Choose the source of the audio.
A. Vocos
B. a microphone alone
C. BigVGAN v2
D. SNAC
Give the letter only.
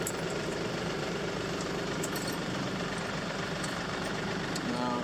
C